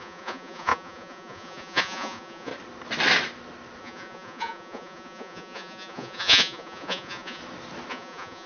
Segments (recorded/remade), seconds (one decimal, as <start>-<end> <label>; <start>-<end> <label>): 0.0-2.5 remade; 2.5-3.8 recorded; 3.8-7.4 remade; 7.4-7.9 recorded; 7.9-8.5 remade